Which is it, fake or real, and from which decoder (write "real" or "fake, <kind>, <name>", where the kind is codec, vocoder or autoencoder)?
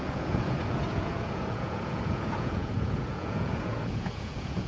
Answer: fake, vocoder, Vocos